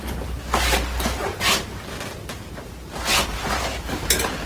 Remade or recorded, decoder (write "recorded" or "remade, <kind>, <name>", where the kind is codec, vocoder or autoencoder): recorded